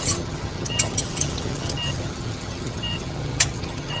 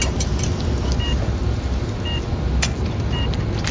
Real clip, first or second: second